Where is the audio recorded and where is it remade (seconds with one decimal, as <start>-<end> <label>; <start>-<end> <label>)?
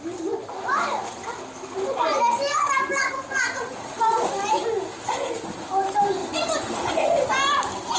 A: 0.0-3.0 recorded; 3.0-4.0 remade; 4.0-8.0 recorded